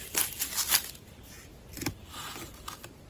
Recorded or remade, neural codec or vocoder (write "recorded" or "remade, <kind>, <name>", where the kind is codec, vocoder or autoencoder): recorded